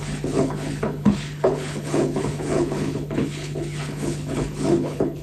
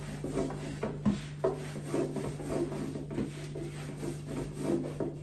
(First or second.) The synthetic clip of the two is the first